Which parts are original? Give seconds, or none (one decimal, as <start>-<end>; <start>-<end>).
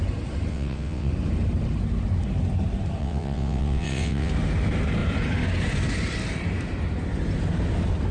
0.0-0.5; 1.1-3.0; 4.3-8.1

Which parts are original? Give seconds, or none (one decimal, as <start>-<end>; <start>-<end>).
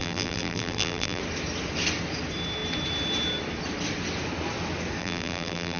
1.2-5.0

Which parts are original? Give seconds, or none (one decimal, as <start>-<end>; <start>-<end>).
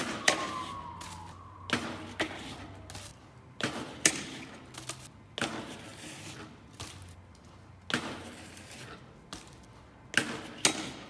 0.9-3.1; 4.1-11.1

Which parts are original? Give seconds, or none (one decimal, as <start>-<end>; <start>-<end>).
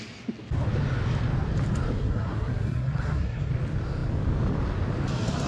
0.0-2.0; 3.5-5.5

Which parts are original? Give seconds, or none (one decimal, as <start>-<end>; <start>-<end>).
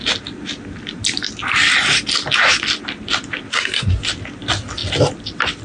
0.0-3.5; 4.0-5.6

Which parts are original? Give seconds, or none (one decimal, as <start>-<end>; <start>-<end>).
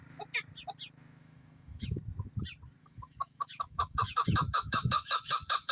0.0-1.2; 2.0-2.8